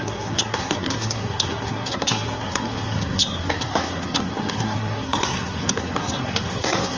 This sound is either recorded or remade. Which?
remade